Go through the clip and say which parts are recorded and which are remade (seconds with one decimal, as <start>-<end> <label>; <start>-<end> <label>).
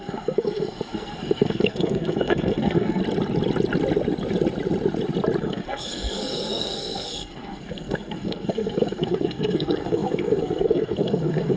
0.0-3.0 remade; 3.0-5.4 recorded; 5.4-11.6 remade